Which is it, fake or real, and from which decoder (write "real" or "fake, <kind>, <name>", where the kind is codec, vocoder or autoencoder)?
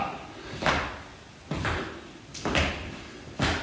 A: real